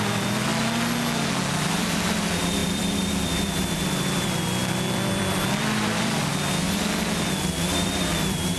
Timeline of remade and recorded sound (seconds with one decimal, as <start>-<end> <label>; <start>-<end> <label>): 0.0-0.5 remade; 0.5-1.5 recorded; 1.5-8.6 remade